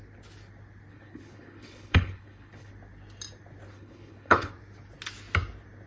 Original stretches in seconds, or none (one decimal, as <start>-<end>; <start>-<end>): 0.0-0.9; 2.7-3.7; 4.5-5.9